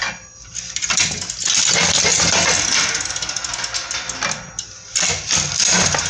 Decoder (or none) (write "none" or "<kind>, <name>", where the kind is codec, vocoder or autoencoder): none